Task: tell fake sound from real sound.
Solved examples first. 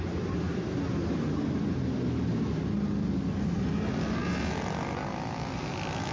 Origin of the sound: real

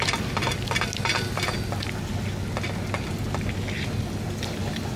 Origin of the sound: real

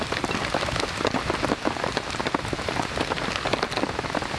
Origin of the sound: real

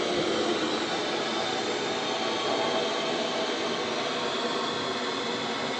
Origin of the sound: real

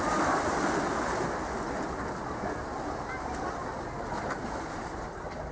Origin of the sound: real